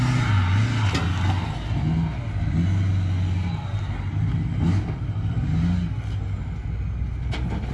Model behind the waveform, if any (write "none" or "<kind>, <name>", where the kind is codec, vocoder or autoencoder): none